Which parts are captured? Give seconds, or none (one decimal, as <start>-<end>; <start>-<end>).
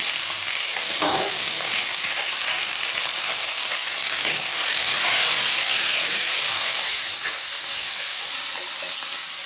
0.0-0.5; 2.8-3.2; 8.3-9.5